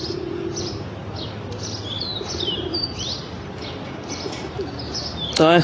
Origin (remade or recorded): recorded